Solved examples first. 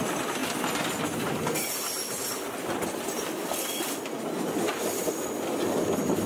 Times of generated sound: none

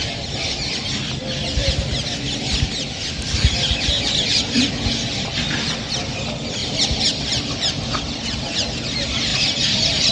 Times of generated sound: 6.6-7.7 (vocoder, BigVGAN v2)

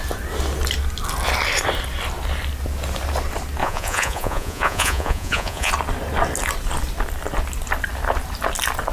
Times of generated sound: 3.6-5.7 (vocoder, Vocos)

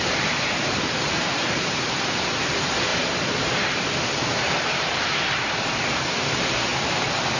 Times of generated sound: 0.0-7.4 (vocoder, BigVGAN v2)

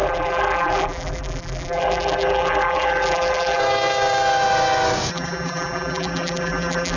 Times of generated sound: 0.0-3.6 (vocoder, BigVGAN v2); 5.1-7.0